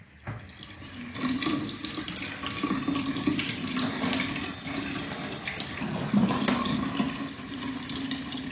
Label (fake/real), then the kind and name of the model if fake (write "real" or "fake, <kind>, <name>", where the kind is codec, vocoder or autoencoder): real